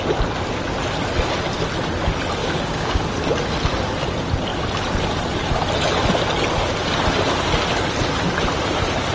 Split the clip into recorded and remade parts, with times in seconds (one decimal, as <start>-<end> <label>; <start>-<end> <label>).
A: 0.0-2.4 recorded; 2.4-3.0 remade; 3.0-9.1 recorded